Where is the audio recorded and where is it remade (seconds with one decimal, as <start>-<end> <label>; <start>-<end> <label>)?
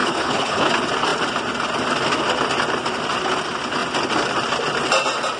0.0-0.7 remade; 0.7-5.4 recorded